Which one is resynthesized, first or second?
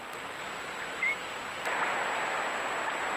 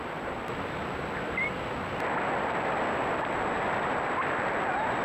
second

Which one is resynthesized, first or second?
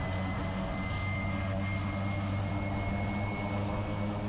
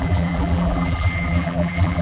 second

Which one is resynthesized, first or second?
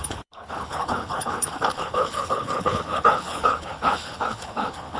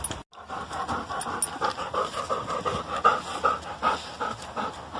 first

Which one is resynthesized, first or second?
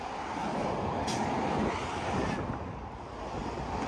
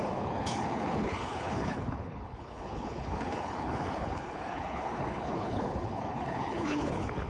second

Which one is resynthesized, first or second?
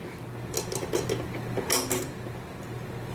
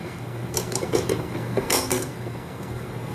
second